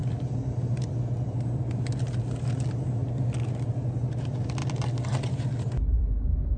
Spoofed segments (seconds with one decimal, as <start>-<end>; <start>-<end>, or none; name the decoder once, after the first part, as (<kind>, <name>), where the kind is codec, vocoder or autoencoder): none

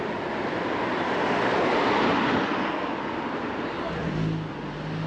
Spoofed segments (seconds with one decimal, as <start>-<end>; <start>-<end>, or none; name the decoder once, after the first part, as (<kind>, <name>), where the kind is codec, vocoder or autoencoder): none

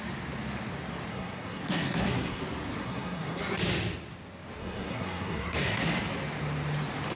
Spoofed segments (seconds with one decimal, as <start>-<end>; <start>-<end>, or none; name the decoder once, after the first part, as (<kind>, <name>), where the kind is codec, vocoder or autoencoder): 1.1-2.4 (codec, SNAC); 2.8-3.4; 4.6-5.9

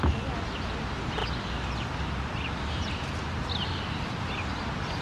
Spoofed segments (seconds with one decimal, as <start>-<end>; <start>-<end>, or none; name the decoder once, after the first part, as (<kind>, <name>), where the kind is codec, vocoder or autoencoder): none

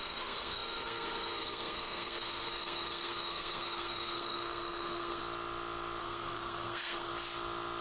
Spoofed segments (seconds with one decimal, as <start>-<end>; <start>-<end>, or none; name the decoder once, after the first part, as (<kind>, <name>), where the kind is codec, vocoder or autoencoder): 0.0-5.2 (codec, SNAC); 6.0-7.1

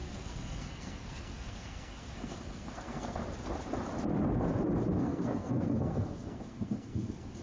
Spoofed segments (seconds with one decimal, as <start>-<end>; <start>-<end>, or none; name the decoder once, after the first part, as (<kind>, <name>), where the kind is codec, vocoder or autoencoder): 0.0-3.2 (codec, SNAC); 5.0-7.4

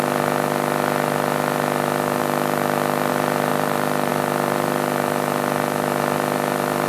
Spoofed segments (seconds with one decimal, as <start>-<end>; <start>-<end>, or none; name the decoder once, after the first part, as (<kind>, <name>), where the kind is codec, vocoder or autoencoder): 3.5-4.1 (vocoder, BigVGAN v2)

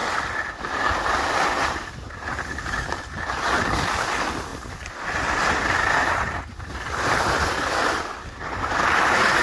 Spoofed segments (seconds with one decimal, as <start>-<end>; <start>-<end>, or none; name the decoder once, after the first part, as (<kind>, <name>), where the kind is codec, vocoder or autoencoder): none